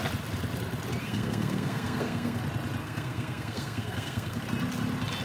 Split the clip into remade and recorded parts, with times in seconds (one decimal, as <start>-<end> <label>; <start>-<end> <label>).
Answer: 0.0-1.0 recorded; 1.0-2.4 remade; 2.4-2.8 recorded; 2.8-4.4 remade; 4.4-5.2 recorded